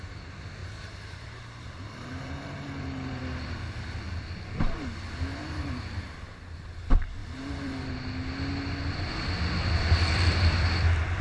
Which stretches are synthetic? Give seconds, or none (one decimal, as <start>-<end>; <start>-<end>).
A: 0.6-3.2; 5.3-6.1; 7.2-7.9